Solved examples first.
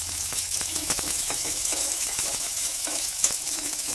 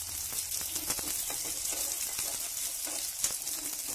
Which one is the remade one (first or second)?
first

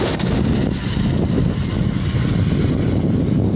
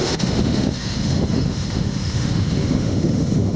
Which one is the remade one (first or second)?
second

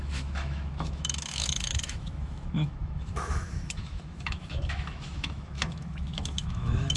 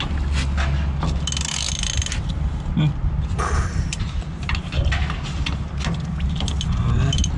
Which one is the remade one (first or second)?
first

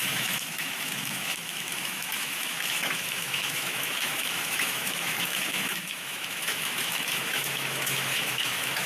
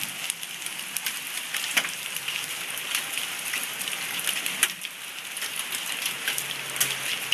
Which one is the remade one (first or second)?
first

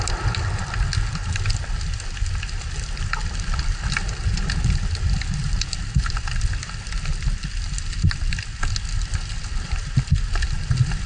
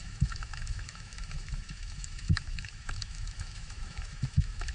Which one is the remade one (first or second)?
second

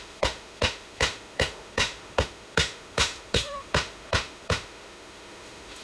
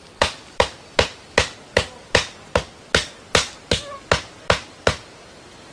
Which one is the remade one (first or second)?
first